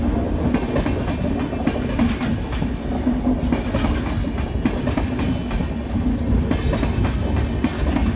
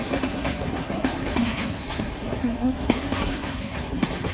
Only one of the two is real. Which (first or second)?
first